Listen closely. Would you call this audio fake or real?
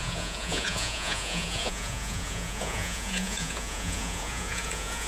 fake